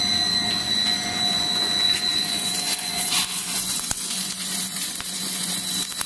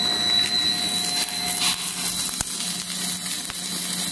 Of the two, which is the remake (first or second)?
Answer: first